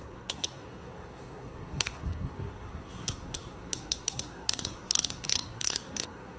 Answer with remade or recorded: remade